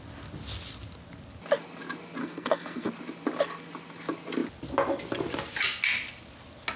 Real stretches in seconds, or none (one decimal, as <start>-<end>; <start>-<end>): 0.0-2.2; 2.9-6.8